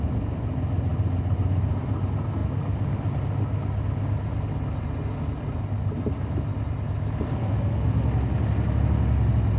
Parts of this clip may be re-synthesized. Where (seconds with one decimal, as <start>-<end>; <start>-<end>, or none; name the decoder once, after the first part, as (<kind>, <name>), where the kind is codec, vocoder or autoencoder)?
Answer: none